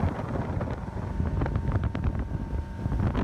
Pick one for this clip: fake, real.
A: real